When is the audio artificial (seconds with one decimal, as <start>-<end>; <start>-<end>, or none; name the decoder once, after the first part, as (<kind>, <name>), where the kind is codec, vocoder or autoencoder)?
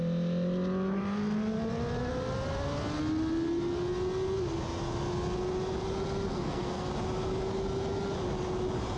6.3-6.9 (codec, SNAC)